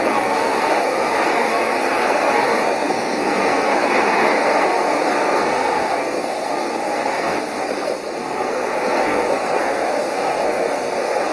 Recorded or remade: remade